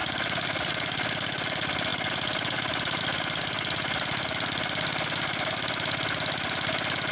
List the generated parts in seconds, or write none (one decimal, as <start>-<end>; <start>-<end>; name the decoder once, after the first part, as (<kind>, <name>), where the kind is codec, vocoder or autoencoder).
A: 0.0-0.7 (vocoder, BigVGAN v2)